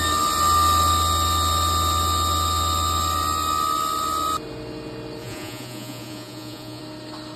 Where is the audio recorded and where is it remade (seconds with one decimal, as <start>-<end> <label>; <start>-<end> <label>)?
0.0-5.2 recorded; 5.2-6.8 remade; 6.8-7.4 recorded